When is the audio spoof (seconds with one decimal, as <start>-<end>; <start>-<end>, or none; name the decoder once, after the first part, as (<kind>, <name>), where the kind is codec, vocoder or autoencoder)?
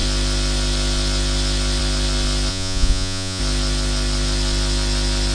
2.5-3.4 (vocoder, Vocos)